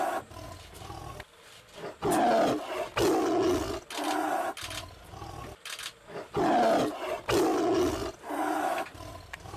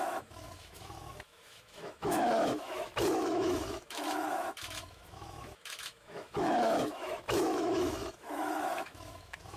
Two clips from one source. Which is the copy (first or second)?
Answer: second